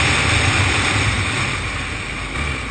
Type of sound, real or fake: real